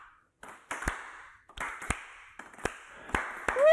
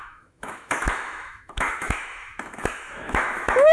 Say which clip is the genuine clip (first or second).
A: first